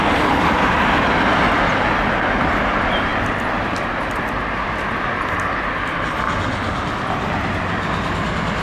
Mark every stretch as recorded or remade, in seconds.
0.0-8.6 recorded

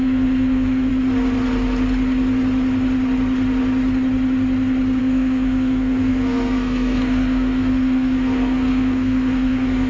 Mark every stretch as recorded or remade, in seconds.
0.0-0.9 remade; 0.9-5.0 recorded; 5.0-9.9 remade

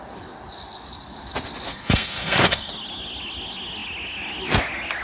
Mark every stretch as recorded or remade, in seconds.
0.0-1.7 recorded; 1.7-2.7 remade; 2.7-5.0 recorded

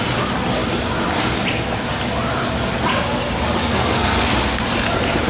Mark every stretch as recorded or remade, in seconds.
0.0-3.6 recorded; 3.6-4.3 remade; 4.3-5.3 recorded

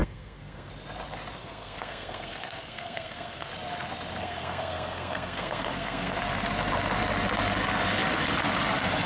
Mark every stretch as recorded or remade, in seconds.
0.0-0.7 remade; 0.7-1.4 recorded; 1.4-3.5 remade; 3.5-4.2 recorded; 4.2-6.2 remade; 6.2-9.1 recorded

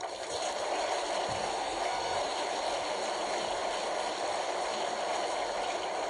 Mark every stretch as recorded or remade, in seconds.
0.0-1.4 recorded; 1.4-2.2 remade; 2.2-6.1 recorded